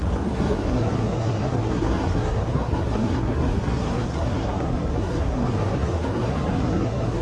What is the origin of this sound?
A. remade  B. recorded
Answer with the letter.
A